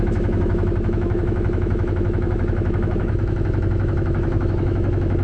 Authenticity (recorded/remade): remade